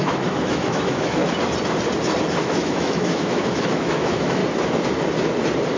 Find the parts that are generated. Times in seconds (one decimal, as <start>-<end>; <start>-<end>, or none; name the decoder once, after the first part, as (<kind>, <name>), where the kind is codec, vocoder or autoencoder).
0.0-1.2 (autoencoder, DAC-VAE); 2.4-4.4

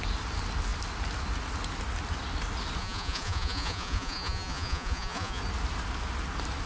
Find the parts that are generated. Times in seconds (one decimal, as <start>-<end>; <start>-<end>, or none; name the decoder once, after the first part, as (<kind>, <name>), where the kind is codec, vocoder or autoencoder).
2.8-5.4 (vocoder, Vocos)